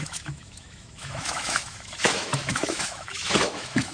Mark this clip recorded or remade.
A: remade